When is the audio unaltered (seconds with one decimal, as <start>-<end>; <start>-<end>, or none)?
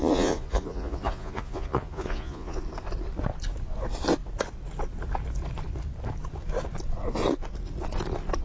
2.6-8.4